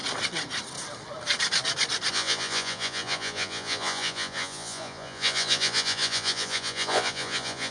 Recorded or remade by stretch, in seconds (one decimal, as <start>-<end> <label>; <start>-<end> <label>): 0.0-2.1 recorded; 2.1-7.7 remade